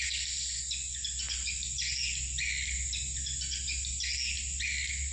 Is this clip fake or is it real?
real